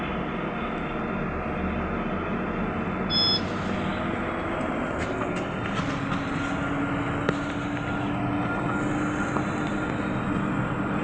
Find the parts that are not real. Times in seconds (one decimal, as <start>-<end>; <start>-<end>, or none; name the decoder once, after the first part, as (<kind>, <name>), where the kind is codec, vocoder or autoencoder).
none